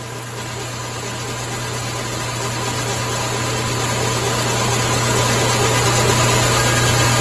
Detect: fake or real real